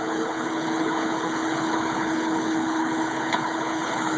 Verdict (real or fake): fake